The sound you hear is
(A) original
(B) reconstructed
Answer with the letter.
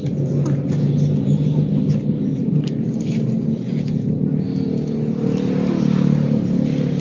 A